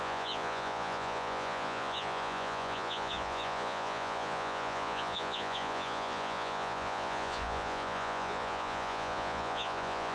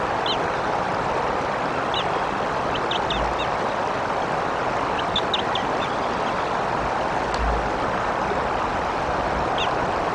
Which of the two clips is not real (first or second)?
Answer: first